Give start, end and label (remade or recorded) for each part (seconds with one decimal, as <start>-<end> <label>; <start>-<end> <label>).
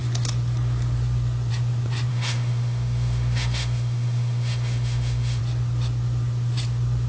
0.0-2.1 recorded; 2.1-5.4 remade; 5.4-7.1 recorded